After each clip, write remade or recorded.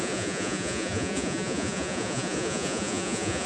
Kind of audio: remade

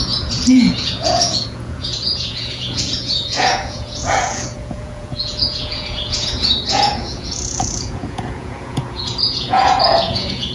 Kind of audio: remade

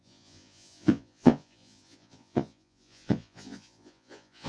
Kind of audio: remade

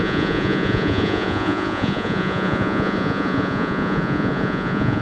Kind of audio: remade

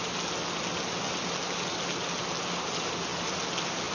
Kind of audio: recorded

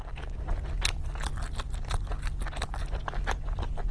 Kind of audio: recorded